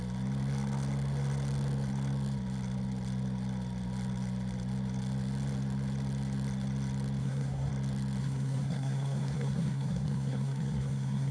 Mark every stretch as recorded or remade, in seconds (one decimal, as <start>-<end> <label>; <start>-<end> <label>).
0.0-7.2 recorded; 7.2-7.7 remade; 7.7-8.2 recorded; 8.2-11.3 remade